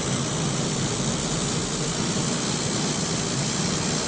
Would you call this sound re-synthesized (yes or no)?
no